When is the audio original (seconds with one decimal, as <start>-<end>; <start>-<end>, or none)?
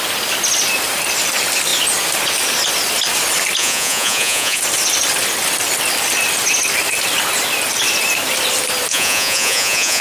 0.0-3.6; 4.6-8.9